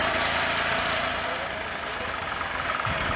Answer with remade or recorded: recorded